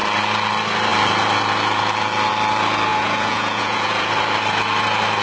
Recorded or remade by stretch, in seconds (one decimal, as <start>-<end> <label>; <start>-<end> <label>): 0.0-2.9 recorded; 2.9-4.1 remade; 4.1-5.2 recorded